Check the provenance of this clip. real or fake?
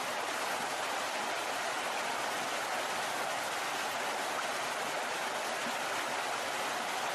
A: real